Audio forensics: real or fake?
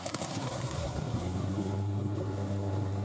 fake